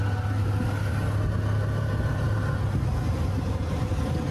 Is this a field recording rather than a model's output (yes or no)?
yes